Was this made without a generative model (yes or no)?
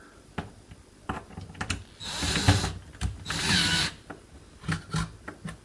yes